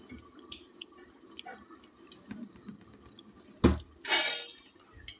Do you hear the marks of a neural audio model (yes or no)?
no